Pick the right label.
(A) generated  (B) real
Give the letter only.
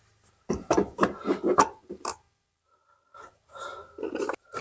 B